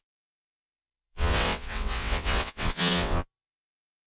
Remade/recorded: remade